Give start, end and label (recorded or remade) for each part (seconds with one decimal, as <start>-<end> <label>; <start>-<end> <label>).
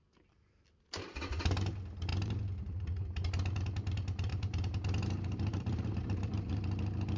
0.0-4.3 recorded; 4.3-6.5 remade; 6.5-7.2 recorded